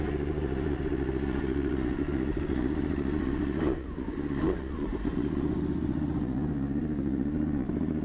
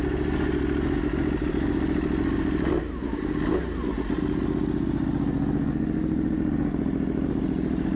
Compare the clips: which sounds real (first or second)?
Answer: second